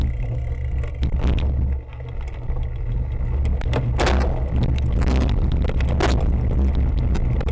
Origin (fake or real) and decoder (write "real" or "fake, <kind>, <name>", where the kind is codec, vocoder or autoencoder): real